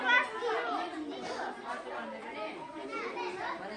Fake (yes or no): no